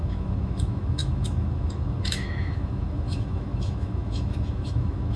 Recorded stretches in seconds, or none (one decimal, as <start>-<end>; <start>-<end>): none